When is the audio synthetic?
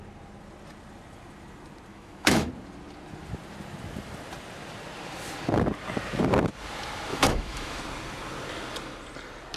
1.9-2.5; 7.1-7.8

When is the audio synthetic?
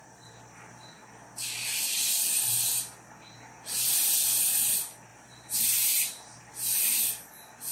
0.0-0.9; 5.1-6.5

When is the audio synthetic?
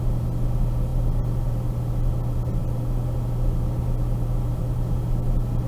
none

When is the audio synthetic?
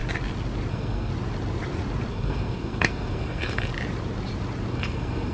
0.7-1.1; 2.1-3.7; 4.7-5.3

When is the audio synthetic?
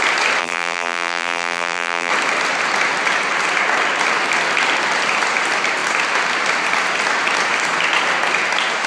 0.4-2.1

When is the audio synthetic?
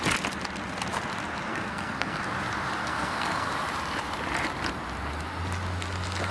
1.5-2.2; 2.8-3.5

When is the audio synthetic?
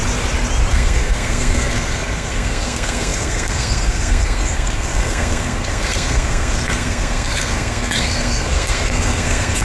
0.7-9.6